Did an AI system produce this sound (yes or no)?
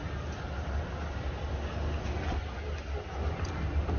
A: no